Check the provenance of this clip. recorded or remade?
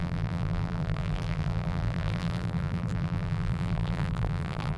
remade